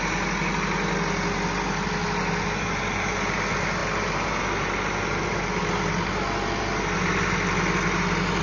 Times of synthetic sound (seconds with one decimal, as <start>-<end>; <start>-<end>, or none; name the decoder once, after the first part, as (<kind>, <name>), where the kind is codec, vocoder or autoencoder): none